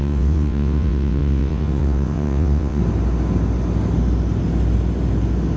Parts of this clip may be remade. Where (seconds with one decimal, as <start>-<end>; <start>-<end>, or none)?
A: 0.0-2.8